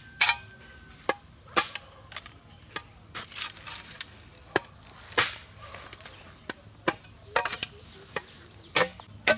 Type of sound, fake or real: real